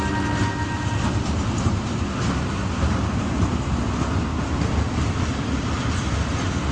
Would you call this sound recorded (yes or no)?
yes